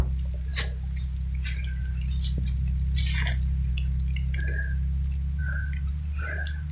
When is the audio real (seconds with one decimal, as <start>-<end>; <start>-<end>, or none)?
0.0-6.7